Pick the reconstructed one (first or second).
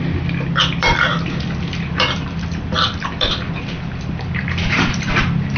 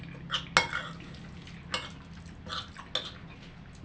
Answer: first